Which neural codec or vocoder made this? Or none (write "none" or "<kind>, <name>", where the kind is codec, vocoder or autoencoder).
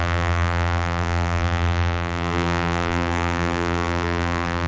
vocoder, BigVGAN v2